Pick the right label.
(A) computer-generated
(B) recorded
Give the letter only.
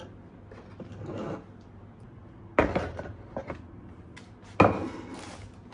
B